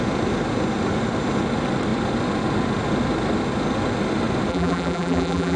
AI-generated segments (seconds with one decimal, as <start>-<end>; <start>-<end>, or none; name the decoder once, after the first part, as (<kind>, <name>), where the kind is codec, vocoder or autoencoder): 4.5-5.6 (vocoder, BigVGAN v2)